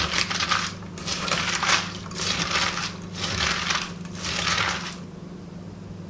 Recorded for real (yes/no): no